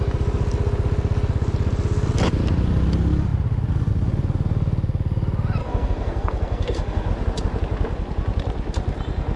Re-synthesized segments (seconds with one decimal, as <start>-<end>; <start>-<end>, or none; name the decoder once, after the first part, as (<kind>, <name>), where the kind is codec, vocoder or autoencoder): 5.6-7.1 (codec, SNAC)